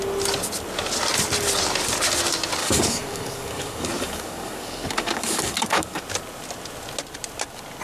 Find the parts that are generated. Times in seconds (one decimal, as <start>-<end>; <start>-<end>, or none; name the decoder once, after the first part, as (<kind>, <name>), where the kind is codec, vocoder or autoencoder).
2.6-6.0 (codec, DAC)